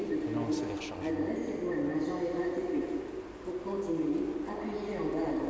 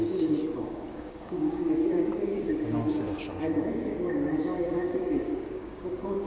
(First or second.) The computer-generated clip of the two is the second